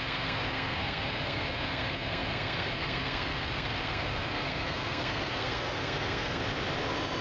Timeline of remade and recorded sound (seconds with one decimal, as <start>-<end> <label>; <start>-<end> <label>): 0.0-6.4 remade; 6.4-7.2 recorded

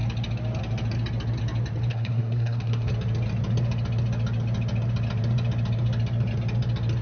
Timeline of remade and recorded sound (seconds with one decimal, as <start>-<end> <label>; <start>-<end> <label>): 0.0-1.9 recorded; 1.9-2.9 remade; 2.9-7.0 recorded

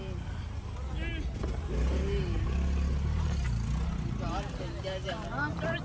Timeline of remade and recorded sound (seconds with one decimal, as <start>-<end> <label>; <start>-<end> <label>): 0.0-5.8 recorded

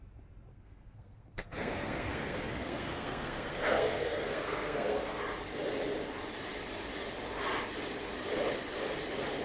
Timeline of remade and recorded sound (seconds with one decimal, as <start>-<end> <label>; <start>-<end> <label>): 0.0-0.5 recorded; 0.5-5.2 remade; 5.2-9.4 recorded

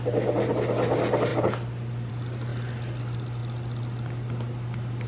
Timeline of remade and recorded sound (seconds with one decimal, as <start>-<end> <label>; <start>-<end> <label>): 0.0-5.1 recorded

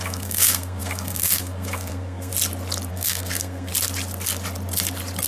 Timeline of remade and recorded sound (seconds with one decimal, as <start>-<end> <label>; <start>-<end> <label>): 0.0-2.3 remade; 2.3-2.9 recorded; 2.9-3.7 remade; 3.7-5.3 recorded

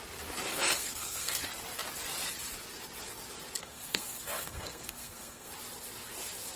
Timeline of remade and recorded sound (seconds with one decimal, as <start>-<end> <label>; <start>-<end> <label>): 0.0-0.5 recorded; 0.5-1.4 remade; 1.4-3.6 recorded; 3.6-5.5 remade; 5.5-6.6 recorded

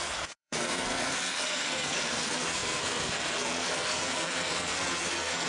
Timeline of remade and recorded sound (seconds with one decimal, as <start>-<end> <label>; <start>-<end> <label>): 0.0-5.5 remade